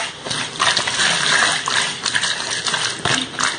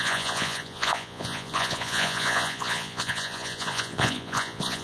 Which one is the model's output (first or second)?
second